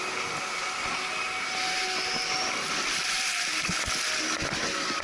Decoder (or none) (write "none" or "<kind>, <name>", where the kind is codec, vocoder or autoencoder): none